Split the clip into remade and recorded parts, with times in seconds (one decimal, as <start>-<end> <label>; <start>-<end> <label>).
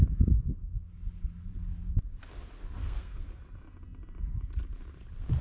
0.0-2.8 recorded; 2.8-3.4 remade; 3.4-5.4 recorded